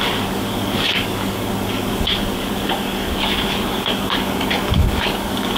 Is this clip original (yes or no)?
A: no